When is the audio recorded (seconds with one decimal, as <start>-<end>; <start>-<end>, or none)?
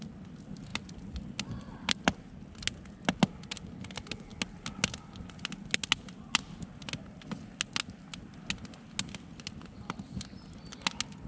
0.0-11.3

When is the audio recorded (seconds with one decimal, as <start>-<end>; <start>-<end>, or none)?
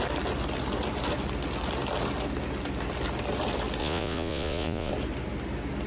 0.0-3.8; 4.9-5.9